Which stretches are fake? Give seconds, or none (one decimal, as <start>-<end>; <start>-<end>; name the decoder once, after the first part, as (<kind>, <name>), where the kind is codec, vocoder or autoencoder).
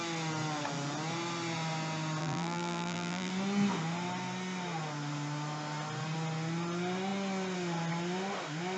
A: 2.2-3.3 (vocoder, BigVGAN v2)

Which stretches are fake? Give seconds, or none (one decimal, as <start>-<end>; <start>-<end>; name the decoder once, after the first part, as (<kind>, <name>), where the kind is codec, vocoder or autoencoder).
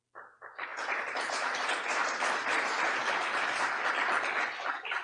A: 0.7-3.7 (vocoder, BigVGAN v2)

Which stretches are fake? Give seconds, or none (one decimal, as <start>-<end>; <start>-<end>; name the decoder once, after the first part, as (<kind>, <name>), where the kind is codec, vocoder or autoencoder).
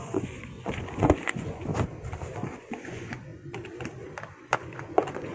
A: 0.0-1.7 (vocoder, Vocos); 2.4-3.3; 4.3-5.3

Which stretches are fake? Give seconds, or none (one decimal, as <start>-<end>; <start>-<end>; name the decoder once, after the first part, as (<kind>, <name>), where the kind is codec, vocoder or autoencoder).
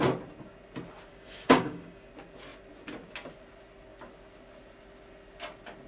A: 1.1-2.1 (codec, DAC)